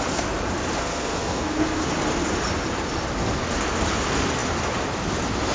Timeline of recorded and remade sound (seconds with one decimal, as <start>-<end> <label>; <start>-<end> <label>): 0.0-0.8 recorded; 0.8-1.9 remade; 1.9-5.5 recorded